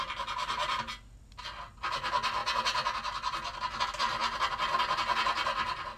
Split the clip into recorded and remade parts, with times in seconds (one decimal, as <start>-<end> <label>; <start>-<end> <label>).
0.0-6.0 recorded